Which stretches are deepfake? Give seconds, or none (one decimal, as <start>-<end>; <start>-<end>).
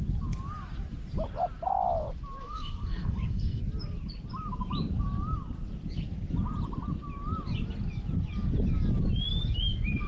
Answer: 2.4-3.6